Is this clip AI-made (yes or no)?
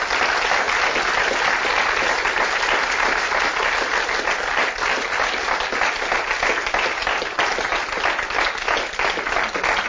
no